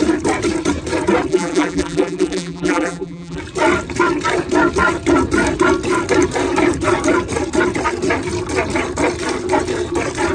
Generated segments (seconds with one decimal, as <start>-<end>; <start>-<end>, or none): 1.3-3.4